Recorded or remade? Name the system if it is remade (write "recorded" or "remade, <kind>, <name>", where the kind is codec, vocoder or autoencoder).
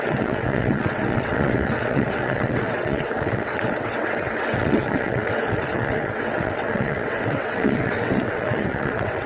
remade, vocoder, WaveNeXt